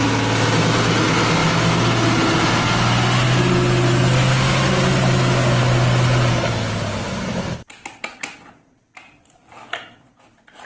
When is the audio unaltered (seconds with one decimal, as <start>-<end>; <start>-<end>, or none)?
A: 0.0-10.7